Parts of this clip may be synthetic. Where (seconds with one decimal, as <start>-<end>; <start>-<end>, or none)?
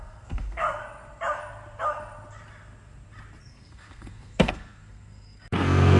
0.0-0.8; 3.4-6.0